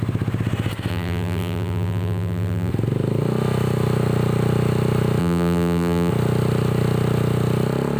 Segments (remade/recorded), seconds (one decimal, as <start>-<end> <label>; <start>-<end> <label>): 0.0-0.9 recorded; 0.9-2.7 remade; 2.7-5.2 recorded; 5.2-6.1 remade; 6.1-8.0 recorded